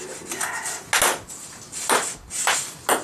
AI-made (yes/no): no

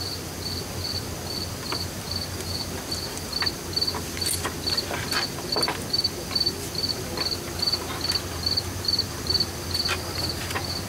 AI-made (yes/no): no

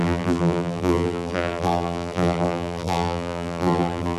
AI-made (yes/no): yes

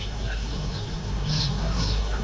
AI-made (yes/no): yes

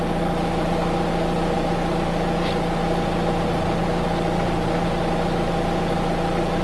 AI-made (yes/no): no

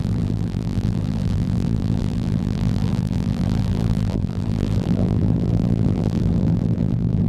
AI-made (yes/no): yes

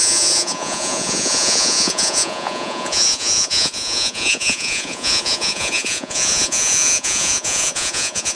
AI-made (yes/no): yes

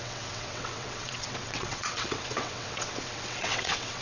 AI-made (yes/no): yes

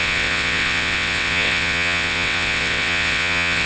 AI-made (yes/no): yes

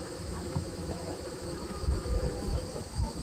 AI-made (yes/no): yes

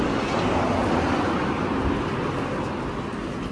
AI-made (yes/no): no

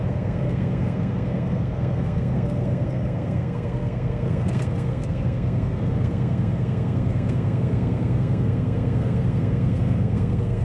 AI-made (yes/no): yes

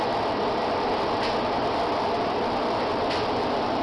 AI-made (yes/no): no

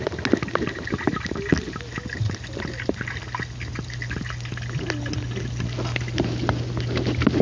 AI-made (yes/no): no